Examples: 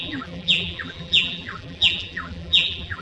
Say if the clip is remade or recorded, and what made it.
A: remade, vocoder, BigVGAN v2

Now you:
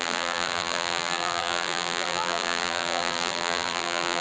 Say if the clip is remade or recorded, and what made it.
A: remade, vocoder, BigVGAN v2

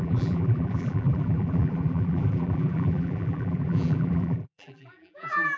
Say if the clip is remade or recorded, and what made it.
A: remade, vocoder, BigVGAN v2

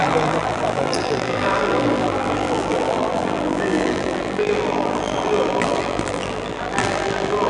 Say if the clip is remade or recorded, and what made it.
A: remade, vocoder, BigVGAN v2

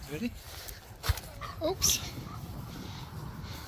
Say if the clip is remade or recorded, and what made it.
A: recorded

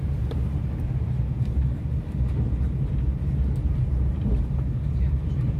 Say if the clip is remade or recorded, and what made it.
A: remade, vocoder, BigVGAN v2